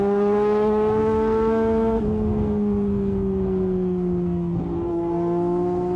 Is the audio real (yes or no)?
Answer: no